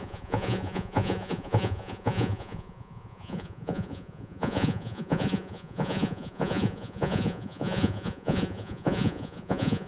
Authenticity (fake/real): fake